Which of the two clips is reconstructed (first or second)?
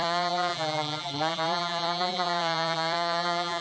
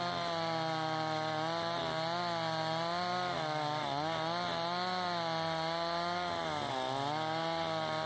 first